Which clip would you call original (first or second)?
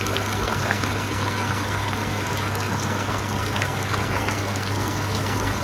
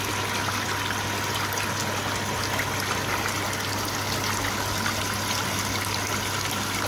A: second